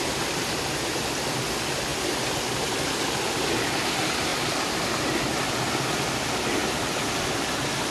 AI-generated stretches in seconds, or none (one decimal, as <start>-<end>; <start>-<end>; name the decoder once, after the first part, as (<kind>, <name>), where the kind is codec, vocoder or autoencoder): none